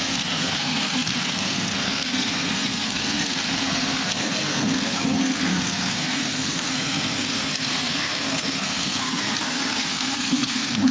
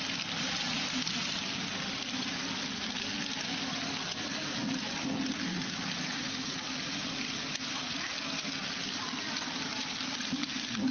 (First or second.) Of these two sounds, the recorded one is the second